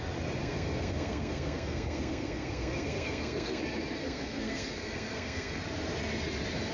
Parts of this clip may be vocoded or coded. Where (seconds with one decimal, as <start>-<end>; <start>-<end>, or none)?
0.4-3.6; 4.0-5.6